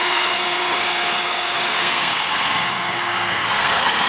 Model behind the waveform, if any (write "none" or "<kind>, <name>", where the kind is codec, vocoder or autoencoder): codec, SNAC